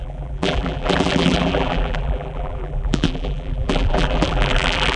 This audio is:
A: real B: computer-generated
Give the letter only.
B